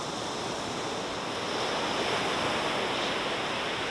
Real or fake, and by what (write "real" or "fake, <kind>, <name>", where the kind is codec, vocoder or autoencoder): real